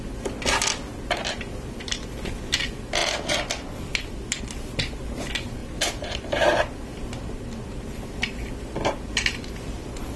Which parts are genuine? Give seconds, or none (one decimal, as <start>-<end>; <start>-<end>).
0.0-5.6; 6.1-10.2